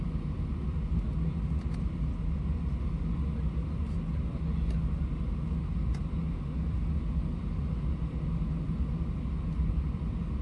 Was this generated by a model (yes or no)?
no